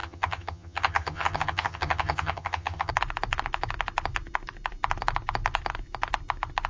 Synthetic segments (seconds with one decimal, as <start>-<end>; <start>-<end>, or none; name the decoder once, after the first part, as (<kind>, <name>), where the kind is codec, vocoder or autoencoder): 0.0-2.9 (vocoder, HiFi-GAN)

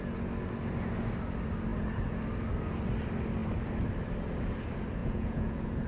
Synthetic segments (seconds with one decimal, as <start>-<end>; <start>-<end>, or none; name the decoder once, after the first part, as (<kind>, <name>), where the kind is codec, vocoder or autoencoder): 5.0-5.9 (vocoder, Vocos)

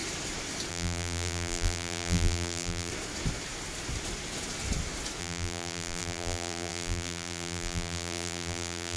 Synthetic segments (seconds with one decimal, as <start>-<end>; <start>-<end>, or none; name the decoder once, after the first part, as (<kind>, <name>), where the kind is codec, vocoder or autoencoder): 0.7-2.9 (vocoder, BigVGAN v2); 5.2-9.0

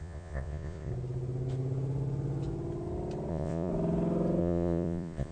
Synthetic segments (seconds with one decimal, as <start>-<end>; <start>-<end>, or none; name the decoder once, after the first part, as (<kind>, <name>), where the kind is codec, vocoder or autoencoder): 0.0-0.9 (vocoder, Vocos); 3.3-3.7; 4.4-5.3

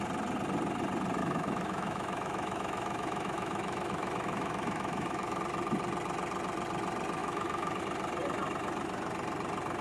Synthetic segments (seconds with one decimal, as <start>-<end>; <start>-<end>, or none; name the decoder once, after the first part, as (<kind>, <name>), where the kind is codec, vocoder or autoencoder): 1.2-5.4 (autoencoder, DAC-VAE); 7.2-7.8